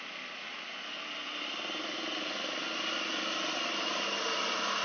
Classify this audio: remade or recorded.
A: recorded